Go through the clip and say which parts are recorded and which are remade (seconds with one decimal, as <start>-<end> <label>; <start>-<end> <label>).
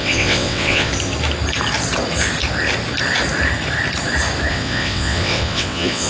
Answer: 0.0-0.9 remade; 0.9-4.5 recorded; 4.5-6.1 remade